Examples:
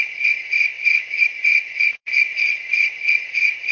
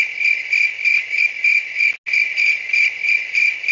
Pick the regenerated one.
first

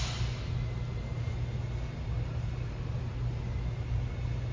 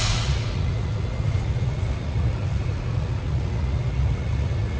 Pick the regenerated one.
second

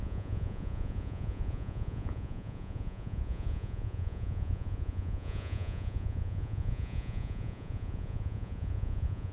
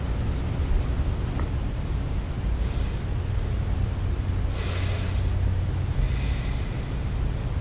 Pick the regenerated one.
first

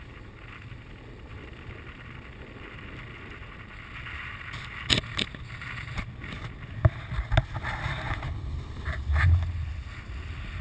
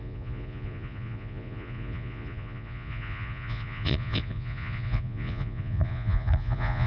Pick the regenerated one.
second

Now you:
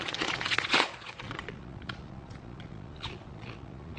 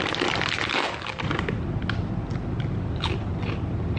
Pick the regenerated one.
first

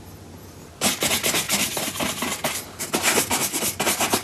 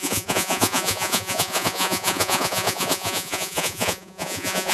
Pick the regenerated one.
second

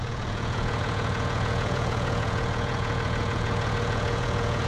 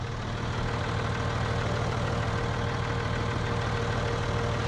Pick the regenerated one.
first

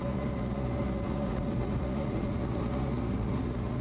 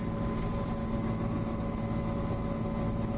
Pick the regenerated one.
first